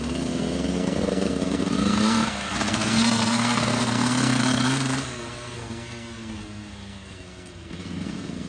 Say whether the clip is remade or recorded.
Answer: remade